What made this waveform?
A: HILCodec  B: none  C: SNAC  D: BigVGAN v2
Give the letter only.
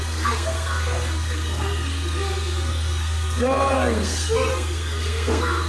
C